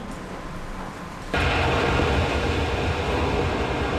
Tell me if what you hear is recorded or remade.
recorded